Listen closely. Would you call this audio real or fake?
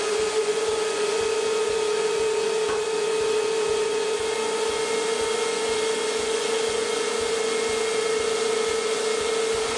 fake